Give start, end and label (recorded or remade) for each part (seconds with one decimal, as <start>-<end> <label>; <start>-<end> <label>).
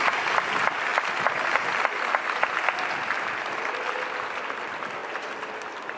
0.0-6.0 recorded